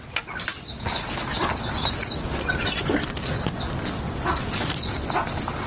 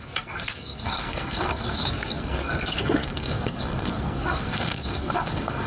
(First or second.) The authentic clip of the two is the first